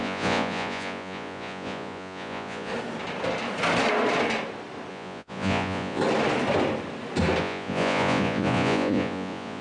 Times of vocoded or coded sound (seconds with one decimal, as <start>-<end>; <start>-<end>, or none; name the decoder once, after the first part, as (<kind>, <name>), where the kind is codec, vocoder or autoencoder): 0.0-2.7 (vocoder, Vocos); 4.9-6.0; 7.4-9.6